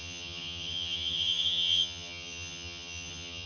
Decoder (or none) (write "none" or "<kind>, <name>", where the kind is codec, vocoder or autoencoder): vocoder, HiFi-GAN